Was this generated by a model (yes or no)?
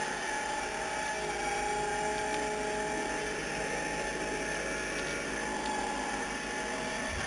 no